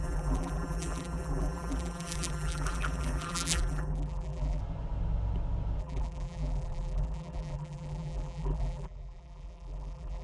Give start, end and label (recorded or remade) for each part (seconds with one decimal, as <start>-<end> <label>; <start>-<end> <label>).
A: 0.0-4.6 remade; 4.6-5.8 recorded; 5.8-10.2 remade